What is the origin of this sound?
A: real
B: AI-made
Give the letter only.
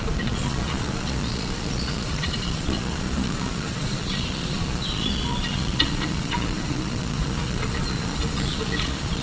B